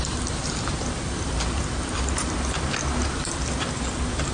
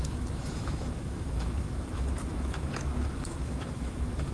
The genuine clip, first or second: first